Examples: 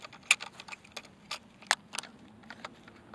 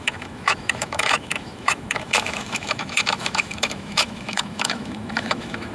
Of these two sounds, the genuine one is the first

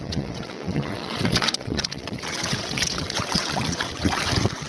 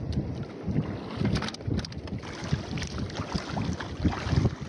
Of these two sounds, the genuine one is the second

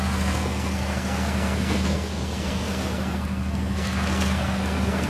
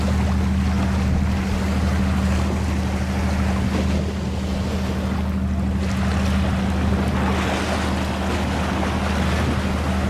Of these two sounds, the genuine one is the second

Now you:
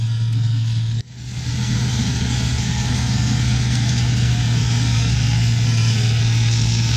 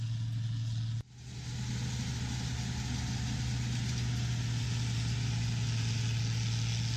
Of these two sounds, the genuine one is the second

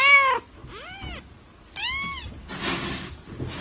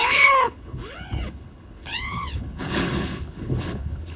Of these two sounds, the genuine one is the first